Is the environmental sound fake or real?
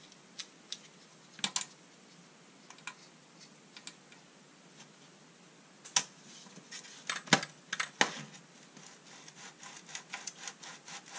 real